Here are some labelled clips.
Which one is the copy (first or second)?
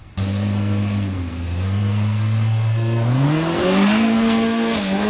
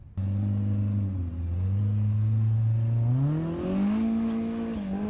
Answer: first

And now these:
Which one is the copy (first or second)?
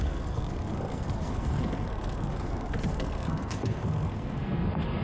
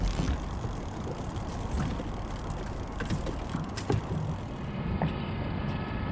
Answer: first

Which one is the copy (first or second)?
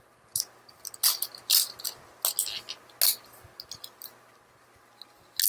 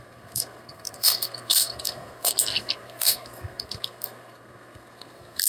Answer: second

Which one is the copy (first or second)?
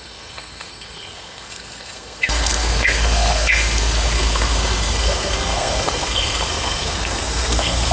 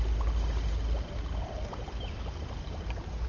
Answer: first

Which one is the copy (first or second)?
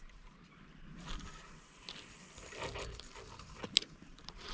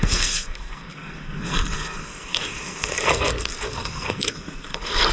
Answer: second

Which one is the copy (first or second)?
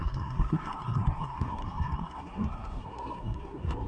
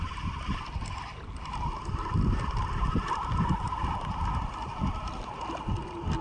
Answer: first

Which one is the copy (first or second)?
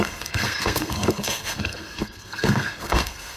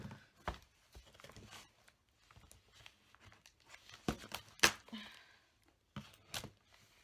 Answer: first